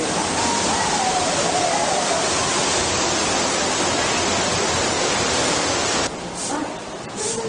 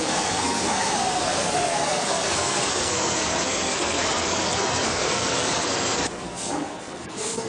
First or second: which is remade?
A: second